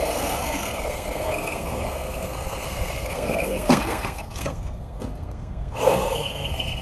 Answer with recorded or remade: remade